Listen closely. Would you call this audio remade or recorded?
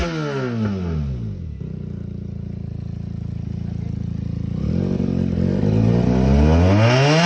recorded